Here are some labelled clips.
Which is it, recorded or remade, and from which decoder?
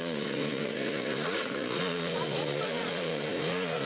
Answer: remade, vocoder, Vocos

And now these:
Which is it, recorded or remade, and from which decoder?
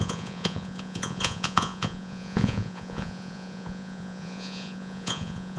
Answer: remade, vocoder, Vocos